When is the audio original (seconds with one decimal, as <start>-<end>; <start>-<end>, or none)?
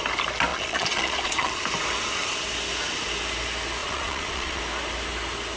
0.0-0.5; 1.6-3.8; 4.6-5.6